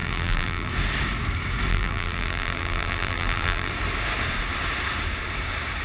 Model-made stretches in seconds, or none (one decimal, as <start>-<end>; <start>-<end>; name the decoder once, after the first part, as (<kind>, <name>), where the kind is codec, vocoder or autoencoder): 0.0-0.7 (vocoder, BigVGAN v2); 1.7-3.7